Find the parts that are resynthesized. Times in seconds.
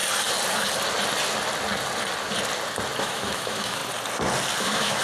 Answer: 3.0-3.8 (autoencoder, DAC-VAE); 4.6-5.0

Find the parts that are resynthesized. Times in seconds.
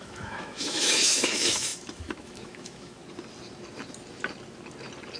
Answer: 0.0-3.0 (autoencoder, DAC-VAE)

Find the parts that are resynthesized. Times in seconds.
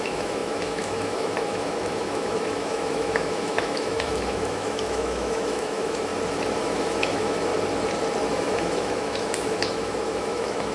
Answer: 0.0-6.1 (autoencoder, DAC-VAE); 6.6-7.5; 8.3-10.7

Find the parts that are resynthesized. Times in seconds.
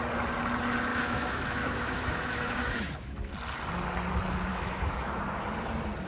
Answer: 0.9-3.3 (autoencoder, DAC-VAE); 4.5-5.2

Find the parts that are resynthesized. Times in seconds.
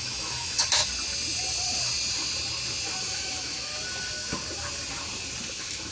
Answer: 0.0-0.8 (autoencoder, DAC-VAE); 3.0-3.7; 5.5-5.9